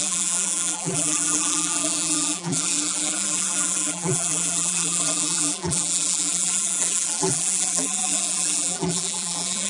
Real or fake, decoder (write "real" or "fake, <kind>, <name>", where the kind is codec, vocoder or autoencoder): fake, vocoder, BigVGAN v2